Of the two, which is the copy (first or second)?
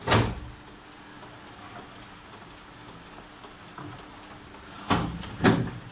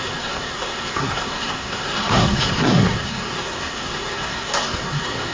second